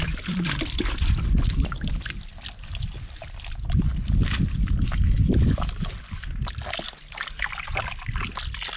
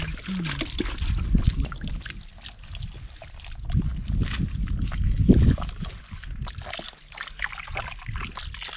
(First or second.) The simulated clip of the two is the first